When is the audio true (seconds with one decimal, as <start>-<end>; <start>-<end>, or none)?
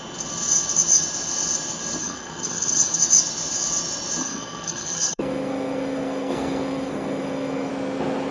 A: 0.0-2.0; 3.0-4.2; 7.7-8.3